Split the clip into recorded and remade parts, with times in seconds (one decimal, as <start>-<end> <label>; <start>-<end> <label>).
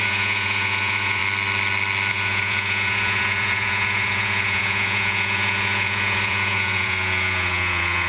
0.0-1.2 remade; 1.2-2.1 recorded; 2.1-8.1 remade